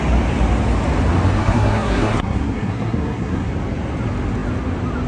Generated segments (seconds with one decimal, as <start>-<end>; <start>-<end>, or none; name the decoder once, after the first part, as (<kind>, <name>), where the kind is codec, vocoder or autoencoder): 1.4-3.5 (codec, SNAC)